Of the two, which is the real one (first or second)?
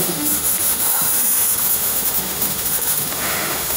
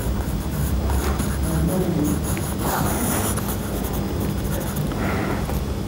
second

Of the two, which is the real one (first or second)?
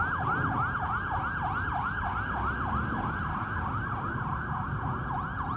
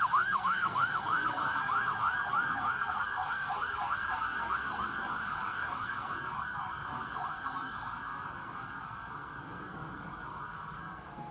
first